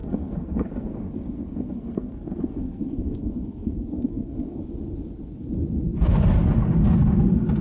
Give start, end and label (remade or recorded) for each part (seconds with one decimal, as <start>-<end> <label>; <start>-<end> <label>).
0.0-4.6 remade; 4.6-7.6 recorded